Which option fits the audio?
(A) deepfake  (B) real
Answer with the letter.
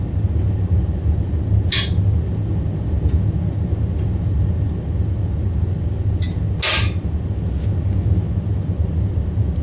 B